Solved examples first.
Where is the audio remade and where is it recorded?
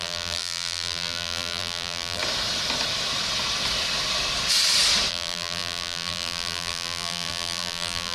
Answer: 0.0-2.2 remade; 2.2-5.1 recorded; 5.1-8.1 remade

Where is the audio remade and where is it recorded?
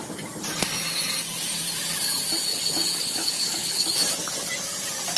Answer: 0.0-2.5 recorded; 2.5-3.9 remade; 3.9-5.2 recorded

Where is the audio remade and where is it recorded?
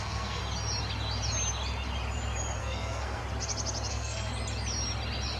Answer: 0.0-0.4 remade; 0.4-2.6 recorded; 2.6-3.2 remade; 3.2-3.9 recorded; 3.9-4.3 remade; 4.3-5.4 recorded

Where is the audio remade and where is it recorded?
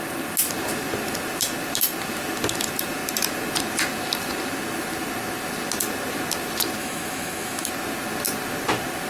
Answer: 0.0-6.8 recorded; 6.8-7.7 remade; 7.7-9.1 recorded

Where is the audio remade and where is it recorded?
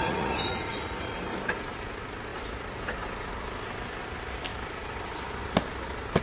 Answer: 0.0-1.2 remade; 1.2-6.2 recorded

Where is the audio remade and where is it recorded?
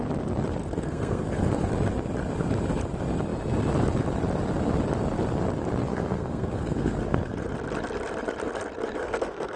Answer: 0.0-0.6 recorded; 0.6-1.7 remade; 1.7-5.9 recorded; 5.9-7.3 remade; 7.3-9.0 recorded; 9.0-9.6 remade